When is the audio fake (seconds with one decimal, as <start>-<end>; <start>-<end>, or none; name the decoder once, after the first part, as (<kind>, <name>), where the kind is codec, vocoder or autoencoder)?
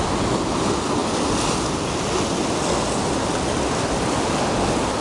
none